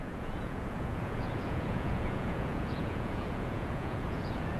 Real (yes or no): no